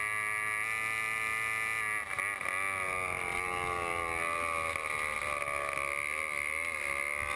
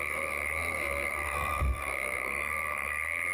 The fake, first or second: second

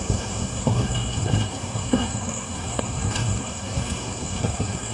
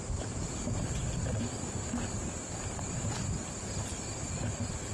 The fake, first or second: first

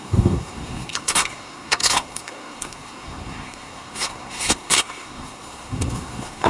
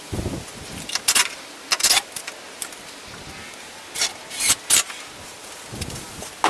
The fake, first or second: first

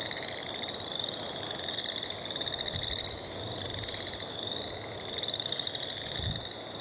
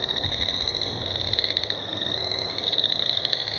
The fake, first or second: second